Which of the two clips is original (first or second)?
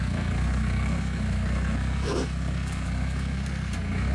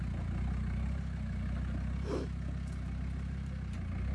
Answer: second